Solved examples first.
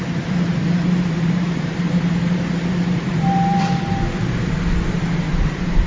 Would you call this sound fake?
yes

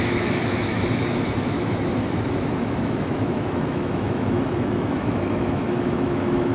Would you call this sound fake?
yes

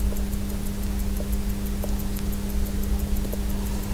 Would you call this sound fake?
no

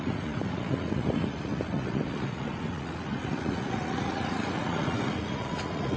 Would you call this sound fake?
yes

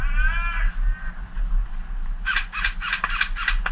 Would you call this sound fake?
no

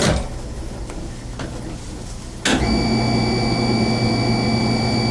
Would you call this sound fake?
no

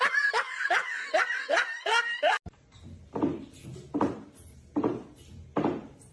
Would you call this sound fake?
no